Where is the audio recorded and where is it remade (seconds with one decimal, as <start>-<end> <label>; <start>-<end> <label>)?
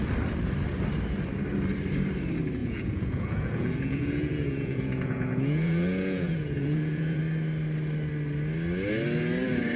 0.0-2.6 recorded; 2.6-7.2 remade; 7.2-9.8 recorded